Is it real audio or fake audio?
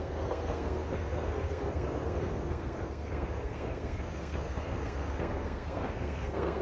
fake